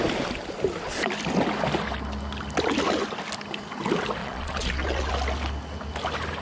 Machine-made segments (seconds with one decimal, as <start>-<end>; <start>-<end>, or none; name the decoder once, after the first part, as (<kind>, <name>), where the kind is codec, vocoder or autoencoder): 4.2-5.1 (vocoder, Vocos)

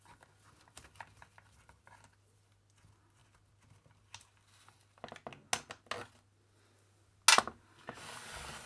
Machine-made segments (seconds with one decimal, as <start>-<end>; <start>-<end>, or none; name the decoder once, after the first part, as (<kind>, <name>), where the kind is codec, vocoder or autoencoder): none

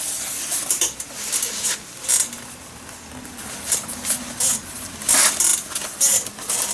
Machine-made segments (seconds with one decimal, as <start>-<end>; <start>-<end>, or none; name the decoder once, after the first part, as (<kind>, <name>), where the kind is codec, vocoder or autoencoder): none

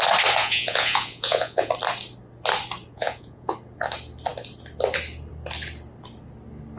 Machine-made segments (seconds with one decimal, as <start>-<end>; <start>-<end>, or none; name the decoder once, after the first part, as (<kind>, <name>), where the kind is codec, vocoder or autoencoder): 0.4-1.7 (vocoder, Vocos); 2.9-3.5

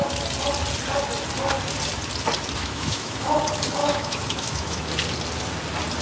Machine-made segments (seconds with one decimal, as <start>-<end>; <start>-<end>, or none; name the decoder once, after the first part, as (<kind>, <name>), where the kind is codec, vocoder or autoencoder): 2.6-3.4 (autoencoder, DAC-VAE); 3.8-4.9

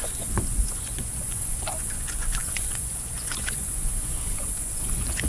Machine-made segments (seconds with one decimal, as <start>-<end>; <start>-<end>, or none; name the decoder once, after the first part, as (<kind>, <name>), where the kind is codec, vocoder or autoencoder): 0.0-5.3 (vocoder, Vocos)

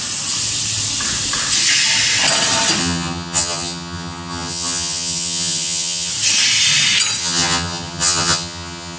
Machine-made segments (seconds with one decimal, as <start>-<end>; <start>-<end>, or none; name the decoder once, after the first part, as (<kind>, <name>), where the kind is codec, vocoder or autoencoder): 2.8-6.1 (vocoder, HiFi-GAN); 7.2-9.0